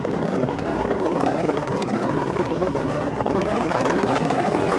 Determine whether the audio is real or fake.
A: fake